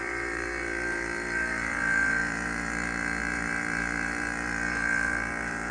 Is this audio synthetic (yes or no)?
yes